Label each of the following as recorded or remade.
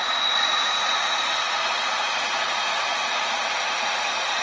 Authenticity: remade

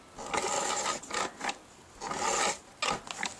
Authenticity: recorded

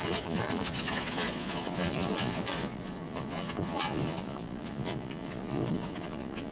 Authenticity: remade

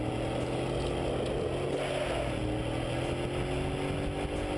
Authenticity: recorded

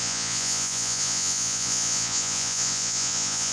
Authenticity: remade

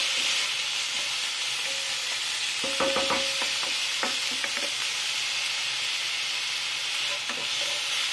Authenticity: recorded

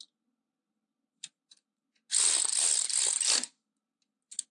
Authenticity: recorded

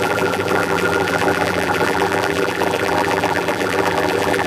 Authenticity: remade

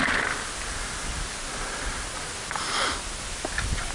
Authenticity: recorded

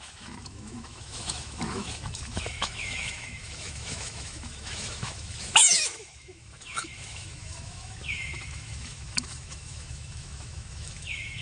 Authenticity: remade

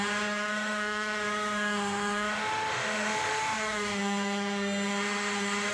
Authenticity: remade